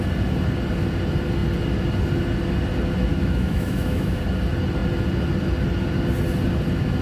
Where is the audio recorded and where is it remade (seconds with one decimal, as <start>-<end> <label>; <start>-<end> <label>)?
0.0-3.1 recorded; 3.1-4.2 remade; 4.2-7.0 recorded